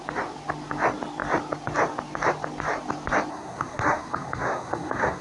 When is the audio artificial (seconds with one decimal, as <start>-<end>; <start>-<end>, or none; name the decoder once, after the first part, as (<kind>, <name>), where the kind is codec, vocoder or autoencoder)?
3.3-5.2 (codec, SNAC)

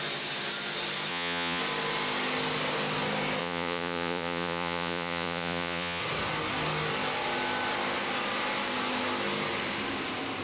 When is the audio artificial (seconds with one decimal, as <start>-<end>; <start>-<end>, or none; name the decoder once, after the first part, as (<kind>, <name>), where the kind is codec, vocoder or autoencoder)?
1.1-1.6 (vocoder, Vocos); 3.4-6.0

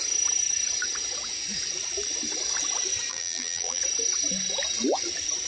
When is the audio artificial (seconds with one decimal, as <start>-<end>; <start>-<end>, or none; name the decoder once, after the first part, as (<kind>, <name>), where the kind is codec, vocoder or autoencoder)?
3.1-3.8 (vocoder, BigVGAN v2)

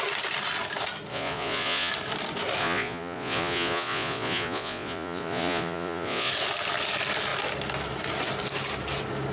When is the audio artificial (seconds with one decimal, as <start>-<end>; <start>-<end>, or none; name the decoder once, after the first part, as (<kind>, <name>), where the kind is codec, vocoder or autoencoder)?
1.1-1.9 (vocoder, Vocos); 2.6-6.3

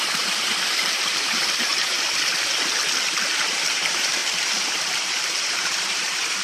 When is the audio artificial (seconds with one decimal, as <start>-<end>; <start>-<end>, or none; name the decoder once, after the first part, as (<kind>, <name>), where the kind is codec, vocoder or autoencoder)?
0.0-1.7 (vocoder, BigVGAN v2); 3.7-4.2; 4.7-6.4

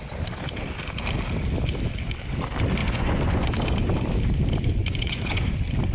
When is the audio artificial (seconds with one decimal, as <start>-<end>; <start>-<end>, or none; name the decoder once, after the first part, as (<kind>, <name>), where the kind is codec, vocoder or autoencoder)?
2.8-3.5 (vocoder, Vocos); 4.8-5.5

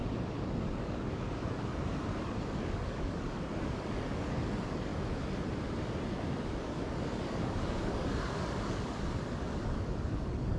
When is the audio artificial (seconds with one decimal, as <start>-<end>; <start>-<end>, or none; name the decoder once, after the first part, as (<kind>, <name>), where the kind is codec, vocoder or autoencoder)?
0.6-4.9 (codec, DAC); 6.3-10.6

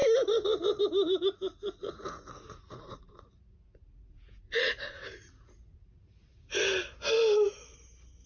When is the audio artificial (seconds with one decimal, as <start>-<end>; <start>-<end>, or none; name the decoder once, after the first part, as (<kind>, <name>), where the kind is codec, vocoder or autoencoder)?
1.8-6.6 (vocoder, Vocos)